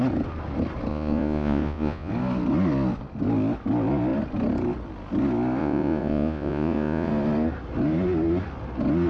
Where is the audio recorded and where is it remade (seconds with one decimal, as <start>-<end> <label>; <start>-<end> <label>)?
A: 0.0-0.9 recorded; 0.9-2.1 remade; 2.1-5.6 recorded; 5.6-7.1 remade; 7.1-9.1 recorded